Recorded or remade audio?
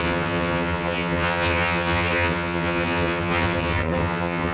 remade